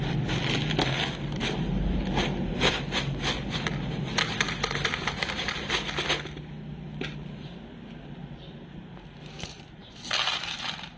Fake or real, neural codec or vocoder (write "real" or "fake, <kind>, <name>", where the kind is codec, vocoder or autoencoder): real